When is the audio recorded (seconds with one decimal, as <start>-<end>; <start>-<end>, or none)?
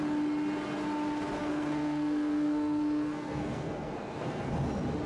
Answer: 0.0-1.4; 4.5-5.1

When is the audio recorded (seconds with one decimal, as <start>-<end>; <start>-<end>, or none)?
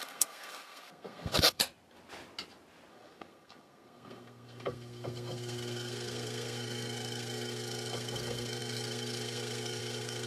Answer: 1.6-2.9